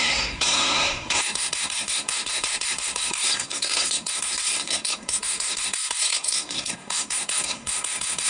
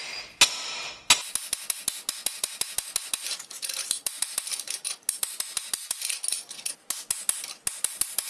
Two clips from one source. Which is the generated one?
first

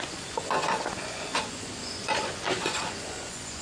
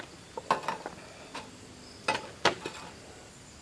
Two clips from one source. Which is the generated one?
first